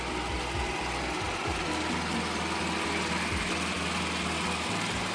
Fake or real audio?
real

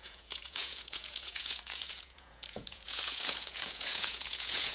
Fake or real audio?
fake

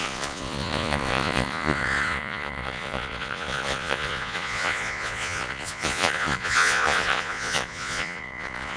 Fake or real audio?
fake